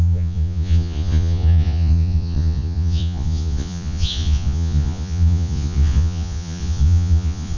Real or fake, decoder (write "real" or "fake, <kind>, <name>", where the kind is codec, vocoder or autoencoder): fake, vocoder, Vocos